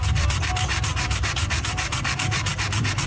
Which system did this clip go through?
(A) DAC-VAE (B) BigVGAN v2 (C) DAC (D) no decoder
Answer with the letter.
B